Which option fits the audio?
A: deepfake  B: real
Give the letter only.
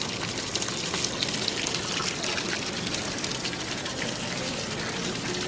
B